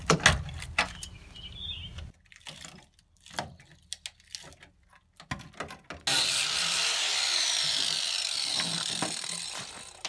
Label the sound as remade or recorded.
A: recorded